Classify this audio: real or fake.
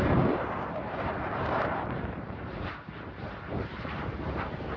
fake